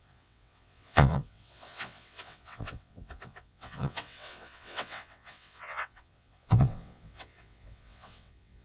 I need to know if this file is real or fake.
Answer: fake